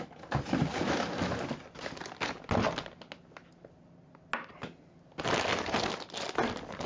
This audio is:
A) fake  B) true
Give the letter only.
B